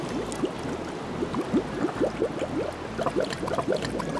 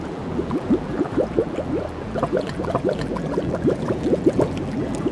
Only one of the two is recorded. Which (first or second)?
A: first